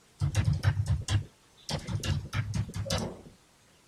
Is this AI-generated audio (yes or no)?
no